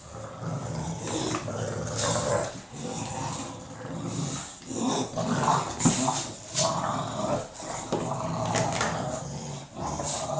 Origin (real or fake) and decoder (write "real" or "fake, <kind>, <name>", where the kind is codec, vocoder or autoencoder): real